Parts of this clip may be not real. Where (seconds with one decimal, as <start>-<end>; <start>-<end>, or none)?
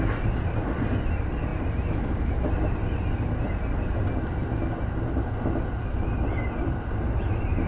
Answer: none